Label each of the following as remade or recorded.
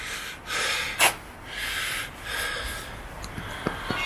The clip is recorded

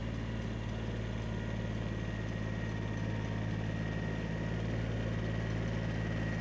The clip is recorded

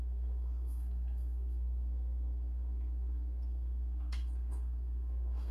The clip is remade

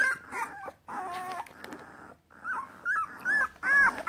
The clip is recorded